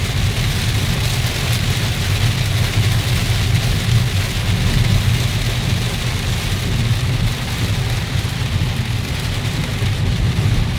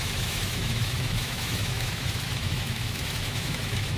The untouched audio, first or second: first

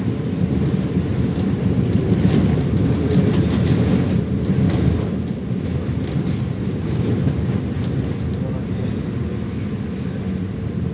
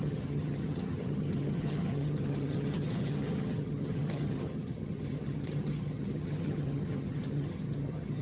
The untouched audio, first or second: first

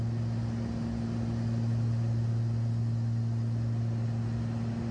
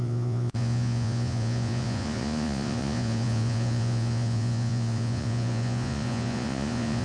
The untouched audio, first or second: first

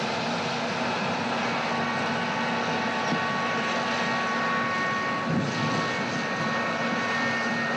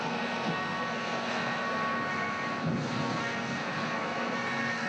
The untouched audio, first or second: first